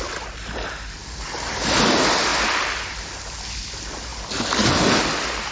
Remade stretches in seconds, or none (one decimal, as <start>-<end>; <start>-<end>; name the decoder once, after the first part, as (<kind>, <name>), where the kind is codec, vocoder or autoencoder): none